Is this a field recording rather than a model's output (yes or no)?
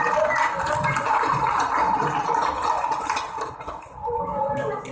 yes